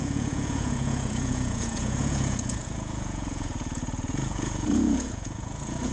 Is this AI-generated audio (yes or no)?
yes